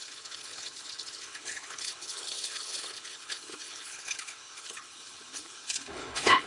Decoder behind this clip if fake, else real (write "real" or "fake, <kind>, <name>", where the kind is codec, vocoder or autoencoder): fake, codec, HILCodec